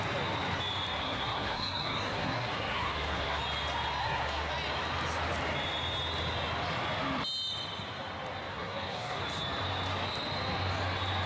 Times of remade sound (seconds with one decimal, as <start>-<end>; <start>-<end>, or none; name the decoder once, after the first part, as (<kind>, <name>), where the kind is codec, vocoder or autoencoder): 1.0-3.4 (codec, SNAC); 4.0-4.5; 8.5-9.2